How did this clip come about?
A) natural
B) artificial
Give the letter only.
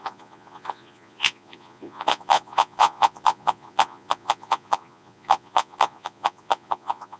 B